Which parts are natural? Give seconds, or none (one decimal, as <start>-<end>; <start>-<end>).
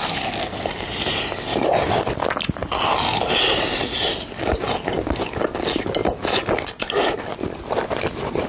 0.0-8.5